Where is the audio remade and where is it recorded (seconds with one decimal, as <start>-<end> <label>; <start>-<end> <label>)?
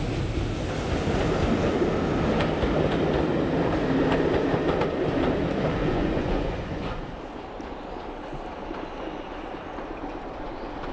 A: 0.0-5.8 recorded; 5.8-7.0 remade; 7.0-10.9 recorded